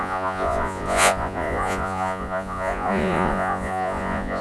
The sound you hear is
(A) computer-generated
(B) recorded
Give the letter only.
A